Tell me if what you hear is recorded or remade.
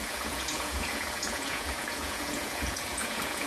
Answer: remade